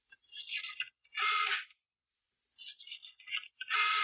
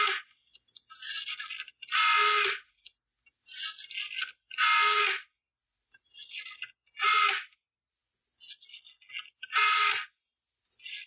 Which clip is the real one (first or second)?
second